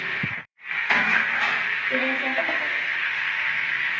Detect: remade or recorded remade